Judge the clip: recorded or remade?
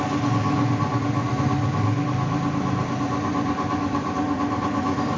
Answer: recorded